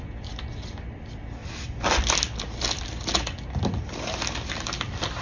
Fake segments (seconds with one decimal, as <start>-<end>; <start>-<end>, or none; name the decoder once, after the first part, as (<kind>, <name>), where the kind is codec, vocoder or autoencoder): none